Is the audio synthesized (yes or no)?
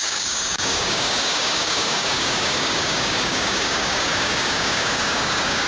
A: yes